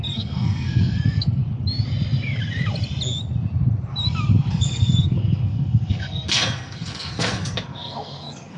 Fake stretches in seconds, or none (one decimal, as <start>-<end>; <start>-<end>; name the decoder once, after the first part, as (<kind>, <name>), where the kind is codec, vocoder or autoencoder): 0.0-1.4 (codec, SNAC); 4.5-8.6

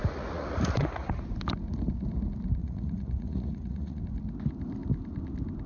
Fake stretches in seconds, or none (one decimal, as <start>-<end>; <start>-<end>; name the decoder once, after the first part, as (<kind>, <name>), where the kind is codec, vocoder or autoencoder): 0.0-1.2 (vocoder, Vocos); 2.6-4.0

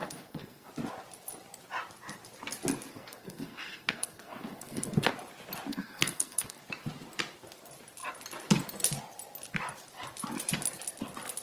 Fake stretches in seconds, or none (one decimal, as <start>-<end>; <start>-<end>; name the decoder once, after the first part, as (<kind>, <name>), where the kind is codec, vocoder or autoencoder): 0.0-0.7 (codec, SNAC); 2.9-5.1; 5.7-6.6

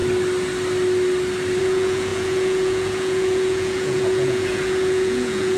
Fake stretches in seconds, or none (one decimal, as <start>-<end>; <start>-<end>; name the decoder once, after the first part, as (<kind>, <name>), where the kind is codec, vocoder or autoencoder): 1.6-5.6 (vocoder, Vocos)

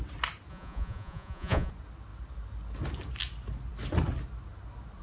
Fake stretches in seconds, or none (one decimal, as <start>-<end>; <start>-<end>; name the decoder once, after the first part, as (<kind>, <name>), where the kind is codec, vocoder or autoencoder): 0.5-1.7 (vocoder, Vocos)

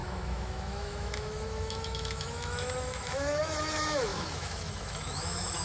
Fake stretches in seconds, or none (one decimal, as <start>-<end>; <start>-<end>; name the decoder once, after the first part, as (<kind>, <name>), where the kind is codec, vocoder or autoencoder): 0.0-5.6 (autoencoder, DAC-VAE)

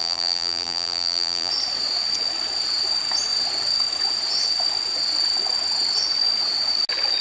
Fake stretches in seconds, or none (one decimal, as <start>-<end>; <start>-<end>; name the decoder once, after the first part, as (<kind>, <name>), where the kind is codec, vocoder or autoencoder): 0.0-1.5 (vocoder, BigVGAN v2)